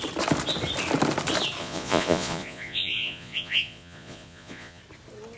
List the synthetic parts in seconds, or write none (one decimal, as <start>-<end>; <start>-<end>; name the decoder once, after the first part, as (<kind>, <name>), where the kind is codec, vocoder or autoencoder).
1.6-4.8 (vocoder, Vocos)